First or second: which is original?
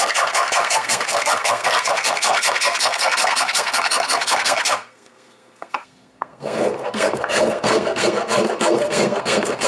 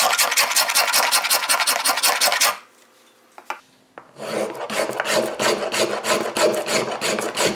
second